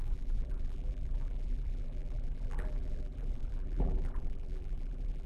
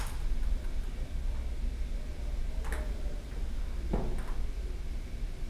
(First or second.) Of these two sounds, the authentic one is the second